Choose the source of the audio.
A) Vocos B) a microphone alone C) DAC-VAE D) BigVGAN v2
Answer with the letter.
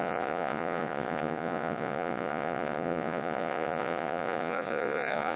A